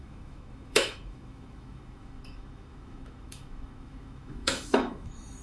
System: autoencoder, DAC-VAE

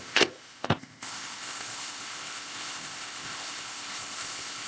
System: codec, ZipCodec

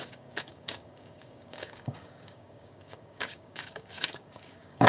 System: codec, DAC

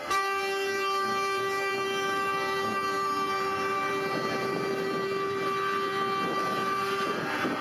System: vocoder, BigVGAN v2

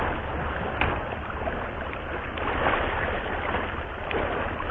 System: none